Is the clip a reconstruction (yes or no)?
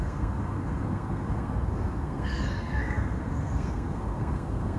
yes